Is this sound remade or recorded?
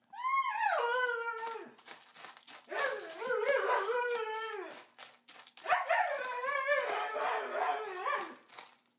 recorded